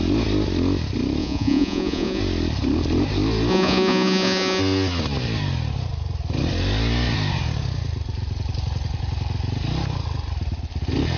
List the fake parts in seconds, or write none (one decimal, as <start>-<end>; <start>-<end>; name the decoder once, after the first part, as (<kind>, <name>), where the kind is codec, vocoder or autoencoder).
1.2-2.2 (vocoder, Vocos); 3.5-4.6